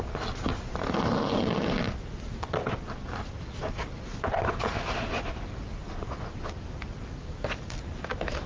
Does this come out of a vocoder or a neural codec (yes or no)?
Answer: no